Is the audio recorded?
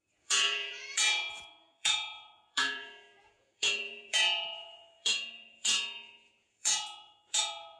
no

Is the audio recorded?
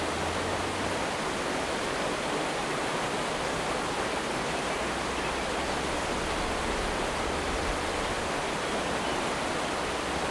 yes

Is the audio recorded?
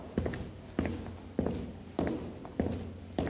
yes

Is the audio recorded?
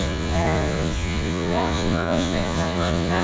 no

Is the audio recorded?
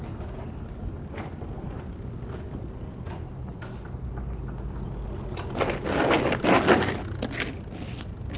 yes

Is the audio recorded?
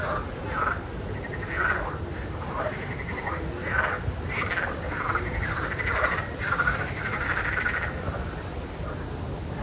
yes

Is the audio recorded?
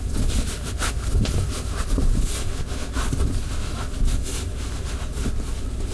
yes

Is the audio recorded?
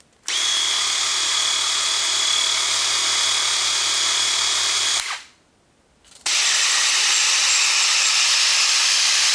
yes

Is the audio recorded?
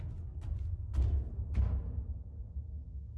yes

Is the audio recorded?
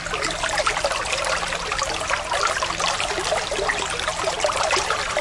yes